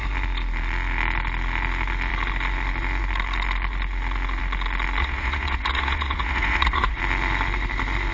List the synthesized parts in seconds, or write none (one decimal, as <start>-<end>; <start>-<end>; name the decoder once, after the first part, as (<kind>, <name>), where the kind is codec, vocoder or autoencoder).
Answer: 5.0-7.0 (vocoder, Vocos)